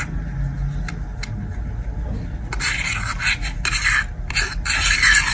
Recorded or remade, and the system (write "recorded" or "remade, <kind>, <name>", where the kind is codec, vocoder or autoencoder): recorded